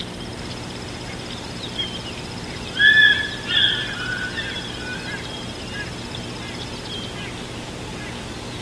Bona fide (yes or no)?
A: yes